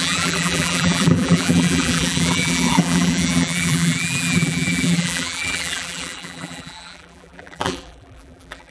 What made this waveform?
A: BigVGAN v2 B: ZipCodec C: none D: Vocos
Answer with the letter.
A